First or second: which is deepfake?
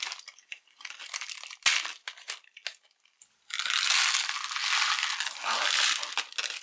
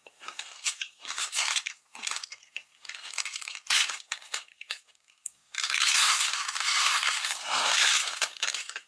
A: second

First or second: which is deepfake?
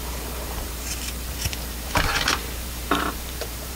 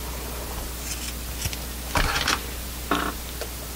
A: first